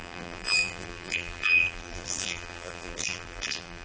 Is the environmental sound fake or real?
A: fake